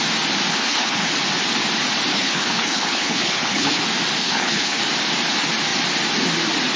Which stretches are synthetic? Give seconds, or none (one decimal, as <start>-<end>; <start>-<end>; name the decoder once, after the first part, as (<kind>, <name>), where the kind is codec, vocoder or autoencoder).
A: 0.5-1.1 (codec, HILCodec); 2.1-3.8; 4.2-4.8